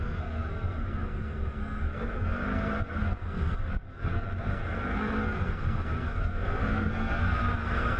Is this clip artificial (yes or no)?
yes